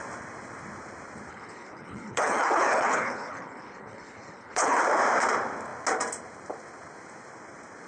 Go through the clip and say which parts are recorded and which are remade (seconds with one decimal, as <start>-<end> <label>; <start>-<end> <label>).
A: 0.0-1.3 recorded; 1.3-4.8 remade; 4.8-7.9 recorded